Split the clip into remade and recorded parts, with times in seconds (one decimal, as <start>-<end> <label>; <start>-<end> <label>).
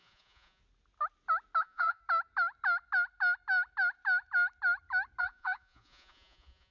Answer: 0.0-0.6 remade; 0.6-1.6 recorded; 1.6-2.0 remade; 2.0-5.2 recorded; 5.2-6.7 remade